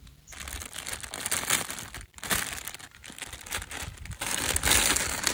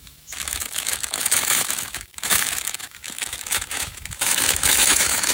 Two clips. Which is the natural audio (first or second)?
first